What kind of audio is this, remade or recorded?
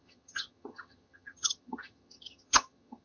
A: remade